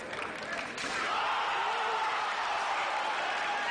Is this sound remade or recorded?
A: recorded